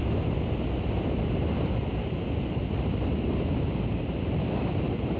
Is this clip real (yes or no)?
yes